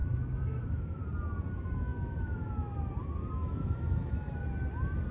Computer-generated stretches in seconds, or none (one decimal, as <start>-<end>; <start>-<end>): 0.0-1.0; 1.9-2.8; 3.4-4.4